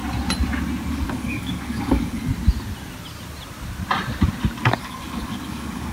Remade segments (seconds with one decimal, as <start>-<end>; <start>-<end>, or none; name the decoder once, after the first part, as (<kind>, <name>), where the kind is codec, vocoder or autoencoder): 0.9-2.3 (codec, DAC); 4.8-5.9